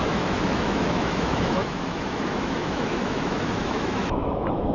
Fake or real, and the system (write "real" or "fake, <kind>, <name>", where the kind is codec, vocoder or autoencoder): fake, autoencoder, DAC-VAE